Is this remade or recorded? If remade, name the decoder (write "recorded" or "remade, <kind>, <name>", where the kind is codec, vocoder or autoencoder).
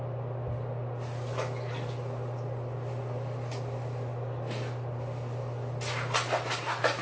recorded